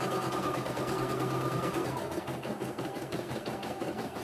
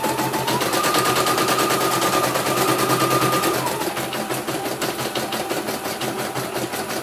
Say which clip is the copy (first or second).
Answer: first